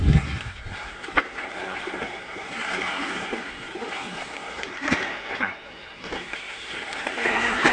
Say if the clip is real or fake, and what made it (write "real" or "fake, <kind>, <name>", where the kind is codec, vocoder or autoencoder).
fake, codec, SNAC